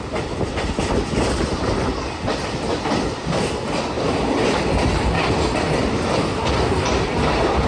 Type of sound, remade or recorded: recorded